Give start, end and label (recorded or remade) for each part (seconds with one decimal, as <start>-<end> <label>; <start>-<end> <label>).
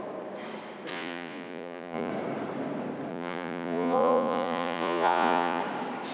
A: 0.0-0.9 recorded; 0.9-2.1 remade; 2.1-3.1 recorded; 3.1-5.6 remade; 5.6-6.1 recorded